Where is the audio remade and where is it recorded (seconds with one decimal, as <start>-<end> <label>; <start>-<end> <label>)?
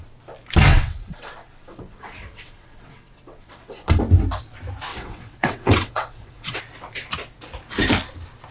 0.0-0.7 recorded; 0.7-4.0 remade; 4.0-4.9 recorded; 4.9-6.6 remade; 6.6-8.5 recorded